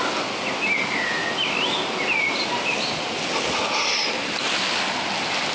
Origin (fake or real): real